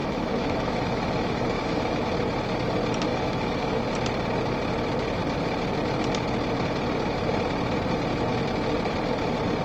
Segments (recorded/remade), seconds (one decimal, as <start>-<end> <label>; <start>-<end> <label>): 0.0-2.1 remade; 2.1-3.1 recorded; 3.1-3.8 remade; 3.8-9.6 recorded